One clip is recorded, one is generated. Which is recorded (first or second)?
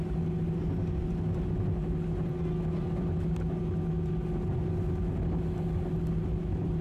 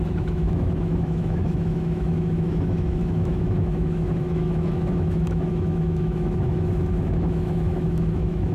first